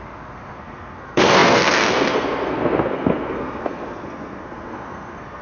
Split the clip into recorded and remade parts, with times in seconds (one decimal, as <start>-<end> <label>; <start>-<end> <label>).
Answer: 0.0-5.4 remade

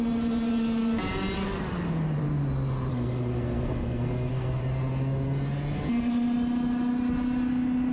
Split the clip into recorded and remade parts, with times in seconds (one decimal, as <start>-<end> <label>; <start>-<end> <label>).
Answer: 0.0-2.9 recorded; 2.9-4.6 remade; 4.6-7.9 recorded

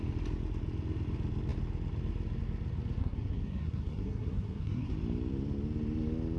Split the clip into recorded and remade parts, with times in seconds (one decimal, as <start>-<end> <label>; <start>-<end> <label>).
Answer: 0.0-3.0 recorded; 3.0-4.9 remade; 4.9-6.4 recorded

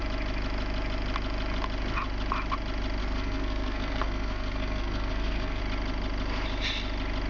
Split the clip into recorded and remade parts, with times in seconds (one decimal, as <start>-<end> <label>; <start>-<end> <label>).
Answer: 0.0-3.0 recorded; 3.0-5.6 remade; 5.6-7.3 recorded

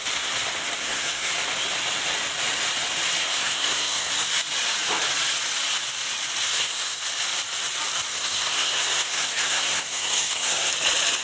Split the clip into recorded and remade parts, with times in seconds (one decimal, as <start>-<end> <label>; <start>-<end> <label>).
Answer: 0.0-0.8 recorded; 0.8-1.3 remade; 1.3-3.2 recorded; 3.2-4.1 remade; 4.1-6.5 recorded; 6.5-7.0 remade; 7.0-8.1 recorded; 8.1-10.7 remade; 10.7-11.2 recorded

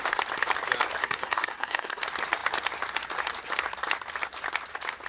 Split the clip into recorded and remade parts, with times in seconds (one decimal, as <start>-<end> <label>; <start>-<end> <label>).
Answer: 0.0-1.0 recorded; 1.0-2.0 remade; 2.0-5.1 recorded

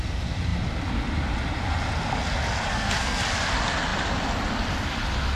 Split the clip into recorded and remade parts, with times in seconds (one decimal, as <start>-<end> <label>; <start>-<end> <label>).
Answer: 0.0-2.7 recorded; 2.7-3.2 remade; 3.2-5.4 recorded

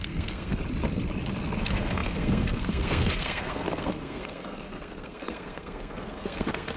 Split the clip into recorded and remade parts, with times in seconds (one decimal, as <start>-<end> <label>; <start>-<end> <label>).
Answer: 0.0-0.6 remade; 0.6-1.6 recorded; 1.6-6.8 remade